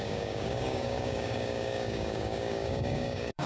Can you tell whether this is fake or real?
fake